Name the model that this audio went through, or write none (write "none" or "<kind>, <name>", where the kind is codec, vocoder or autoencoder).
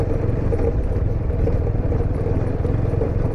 none